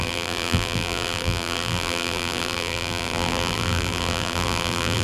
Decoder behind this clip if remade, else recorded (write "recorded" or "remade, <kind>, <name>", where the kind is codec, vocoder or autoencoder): remade, vocoder, BigVGAN v2